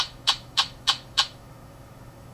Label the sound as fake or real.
fake